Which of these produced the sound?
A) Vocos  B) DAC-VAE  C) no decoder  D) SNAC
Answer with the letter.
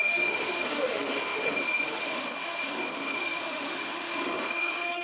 B